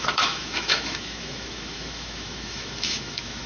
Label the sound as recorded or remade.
remade